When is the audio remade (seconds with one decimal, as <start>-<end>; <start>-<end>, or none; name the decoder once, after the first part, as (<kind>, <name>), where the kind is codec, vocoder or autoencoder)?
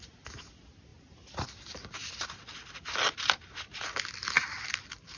none